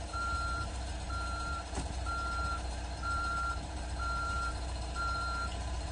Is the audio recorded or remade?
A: remade